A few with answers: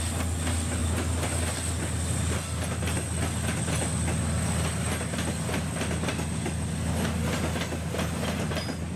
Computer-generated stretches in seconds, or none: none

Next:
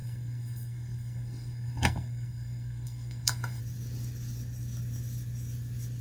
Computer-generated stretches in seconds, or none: 0.0-3.6 (codec, SNAC)

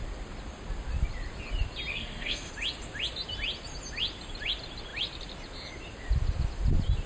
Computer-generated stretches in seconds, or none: 1.9-2.5 (codec, SNAC)